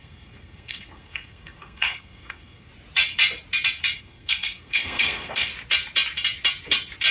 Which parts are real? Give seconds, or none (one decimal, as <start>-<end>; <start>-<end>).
2.7-4.0; 5.5-7.1